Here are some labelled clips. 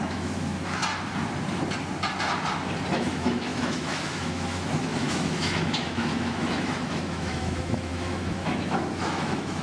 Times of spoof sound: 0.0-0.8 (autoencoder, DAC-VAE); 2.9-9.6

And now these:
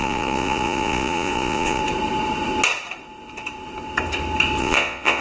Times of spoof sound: 0.0-1.8 (vocoder, Vocos); 4.6-5.2

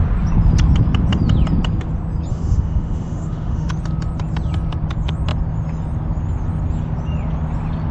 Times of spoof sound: 2.3-3.7 (autoencoder, DAC-VAE)